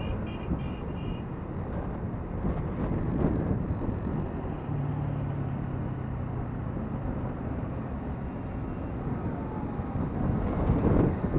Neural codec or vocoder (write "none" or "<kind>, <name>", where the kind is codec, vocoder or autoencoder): none